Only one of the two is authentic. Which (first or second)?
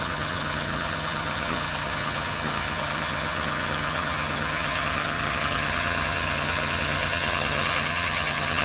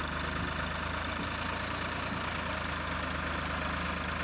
second